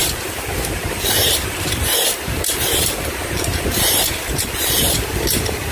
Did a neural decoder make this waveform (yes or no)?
yes